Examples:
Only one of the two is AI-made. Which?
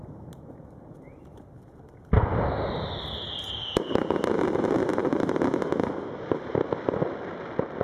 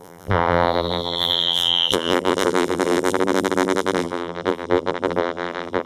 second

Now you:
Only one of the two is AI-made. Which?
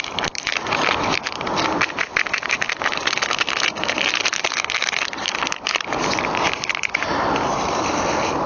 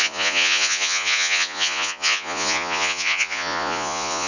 second